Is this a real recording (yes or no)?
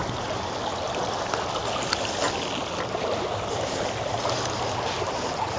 yes